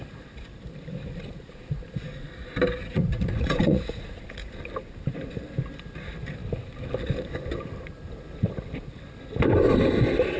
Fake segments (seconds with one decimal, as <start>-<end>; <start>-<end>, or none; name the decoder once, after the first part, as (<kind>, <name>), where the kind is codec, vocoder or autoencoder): 2.8-4.6 (vocoder, Vocos)